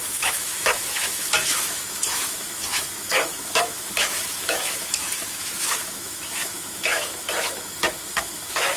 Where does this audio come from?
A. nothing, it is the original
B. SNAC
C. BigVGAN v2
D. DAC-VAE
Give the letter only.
D